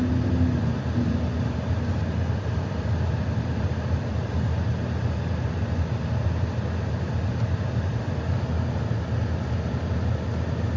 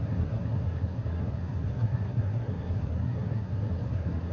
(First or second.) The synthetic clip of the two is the second